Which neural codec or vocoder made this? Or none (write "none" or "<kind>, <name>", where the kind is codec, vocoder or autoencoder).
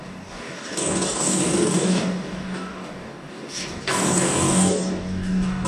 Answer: codec, DAC